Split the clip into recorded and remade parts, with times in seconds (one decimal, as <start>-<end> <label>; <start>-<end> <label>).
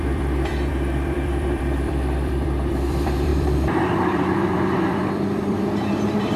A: 0.0-6.4 remade